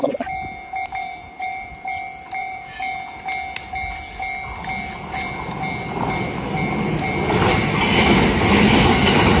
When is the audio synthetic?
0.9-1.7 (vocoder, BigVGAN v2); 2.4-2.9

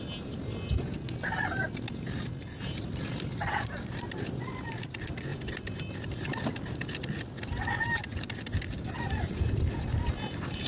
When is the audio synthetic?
5.3-5.8 (vocoder, BigVGAN v2)

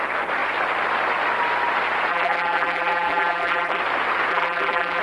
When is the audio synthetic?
2.1-3.8 (vocoder, BigVGAN v2); 4.3-5.0

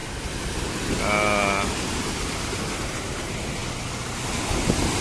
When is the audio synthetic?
none

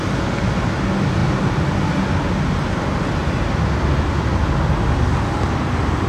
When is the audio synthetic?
3.2-4.3 (vocoder, BigVGAN v2)

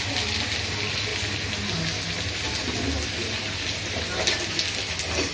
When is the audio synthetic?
none

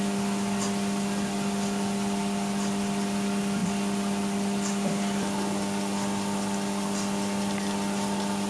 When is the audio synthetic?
none